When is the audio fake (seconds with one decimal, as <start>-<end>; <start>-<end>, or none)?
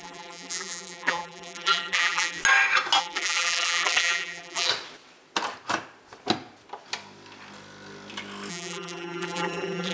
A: 0.0-2.4; 3.0-4.7; 8.5-9.9